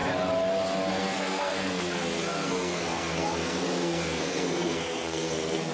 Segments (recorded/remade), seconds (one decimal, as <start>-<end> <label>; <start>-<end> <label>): 0.0-0.9 recorded; 0.9-5.7 remade